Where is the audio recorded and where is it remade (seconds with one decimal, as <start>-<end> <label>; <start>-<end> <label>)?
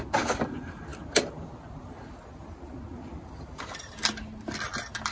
0.0-5.1 recorded